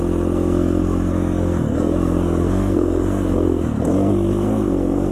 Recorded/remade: remade